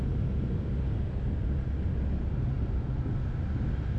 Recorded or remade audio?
recorded